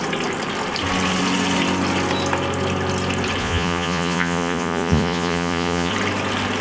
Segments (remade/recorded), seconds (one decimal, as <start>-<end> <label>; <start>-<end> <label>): 0.0-3.4 recorded; 3.4-5.9 remade; 5.9-6.6 recorded